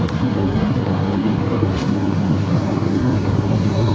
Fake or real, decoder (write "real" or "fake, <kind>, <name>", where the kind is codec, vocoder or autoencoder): fake, codec, SNAC